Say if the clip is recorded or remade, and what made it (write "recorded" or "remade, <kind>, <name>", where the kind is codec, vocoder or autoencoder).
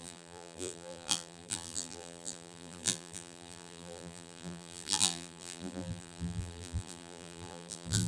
remade, vocoder, BigVGAN v2